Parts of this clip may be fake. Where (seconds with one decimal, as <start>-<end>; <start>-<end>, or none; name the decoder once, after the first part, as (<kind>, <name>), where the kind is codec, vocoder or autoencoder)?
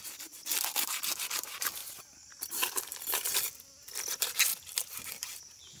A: 0.0-1.8 (vocoder, BigVGAN v2); 2.5-2.9; 3.9-4.5; 5.1-5.8